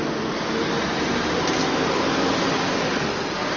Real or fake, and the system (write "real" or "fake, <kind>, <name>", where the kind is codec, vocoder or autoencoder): real